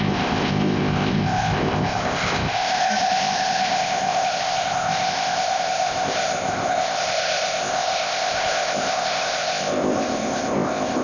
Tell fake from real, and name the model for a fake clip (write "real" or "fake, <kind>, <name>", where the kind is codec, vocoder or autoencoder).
fake, codec, ZipCodec